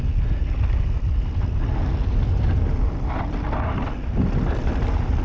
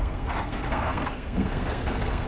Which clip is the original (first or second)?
first